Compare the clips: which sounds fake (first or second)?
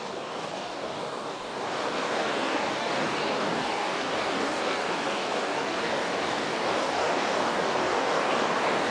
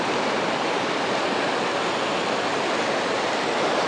first